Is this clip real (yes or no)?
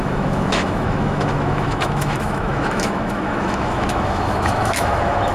no